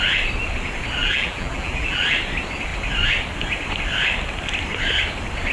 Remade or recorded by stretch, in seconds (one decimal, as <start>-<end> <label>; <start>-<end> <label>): 0.0-1.0 recorded; 1.0-2.0 remade; 2.0-5.5 recorded